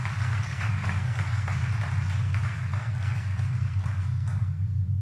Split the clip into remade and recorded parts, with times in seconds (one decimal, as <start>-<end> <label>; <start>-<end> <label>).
0.0-1.6 remade; 1.6-2.2 recorded; 2.2-5.0 remade